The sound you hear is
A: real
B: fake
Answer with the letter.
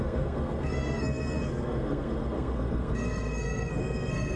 B